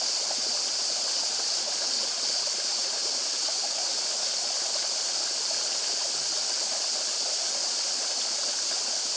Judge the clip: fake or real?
real